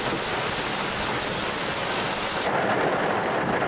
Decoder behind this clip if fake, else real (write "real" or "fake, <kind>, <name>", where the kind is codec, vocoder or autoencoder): real